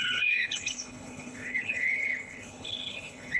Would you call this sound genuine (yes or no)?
no